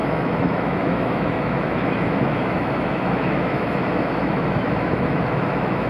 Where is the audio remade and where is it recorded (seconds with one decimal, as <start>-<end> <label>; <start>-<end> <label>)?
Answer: 0.0-5.9 remade